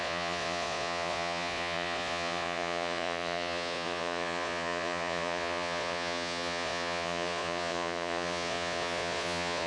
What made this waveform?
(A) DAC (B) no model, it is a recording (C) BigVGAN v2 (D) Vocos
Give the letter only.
D